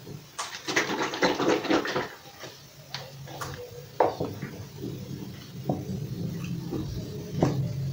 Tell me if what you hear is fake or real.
real